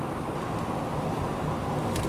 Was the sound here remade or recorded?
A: recorded